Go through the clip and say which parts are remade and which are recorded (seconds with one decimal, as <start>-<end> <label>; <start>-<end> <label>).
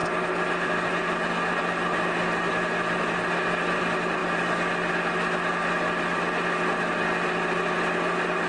0.0-8.5 recorded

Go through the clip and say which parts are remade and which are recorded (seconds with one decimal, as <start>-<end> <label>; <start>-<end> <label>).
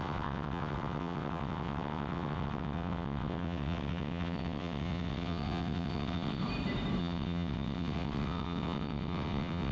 0.0-6.4 remade; 6.4-7.0 recorded; 7.0-9.7 remade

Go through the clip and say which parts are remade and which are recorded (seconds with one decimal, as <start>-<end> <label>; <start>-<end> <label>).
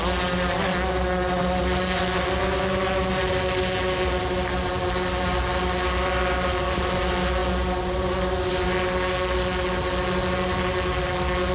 0.0-11.5 recorded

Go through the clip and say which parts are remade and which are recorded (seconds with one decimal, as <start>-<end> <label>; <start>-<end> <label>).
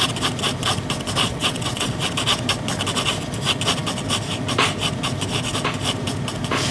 0.0-1.3 recorded; 1.3-1.9 remade; 1.9-6.7 recorded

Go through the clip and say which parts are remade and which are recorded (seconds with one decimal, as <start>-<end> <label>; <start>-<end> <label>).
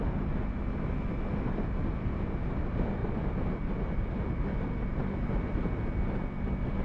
0.0-6.8 recorded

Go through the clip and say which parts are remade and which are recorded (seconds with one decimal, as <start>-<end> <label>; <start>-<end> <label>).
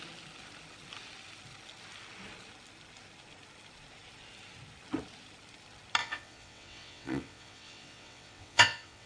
0.0-6.0 recorded; 6.0-9.1 remade